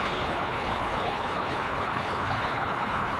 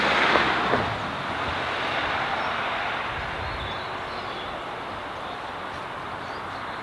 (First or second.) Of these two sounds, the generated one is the first